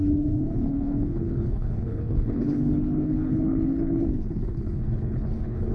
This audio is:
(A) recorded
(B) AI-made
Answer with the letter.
B